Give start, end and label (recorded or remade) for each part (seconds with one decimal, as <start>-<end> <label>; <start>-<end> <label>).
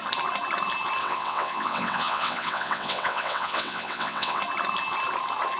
0.0-1.0 recorded; 1.0-4.4 remade; 4.4-5.6 recorded